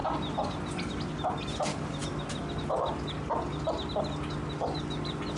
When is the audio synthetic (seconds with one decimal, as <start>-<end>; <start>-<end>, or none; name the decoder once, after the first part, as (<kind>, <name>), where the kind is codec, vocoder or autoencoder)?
none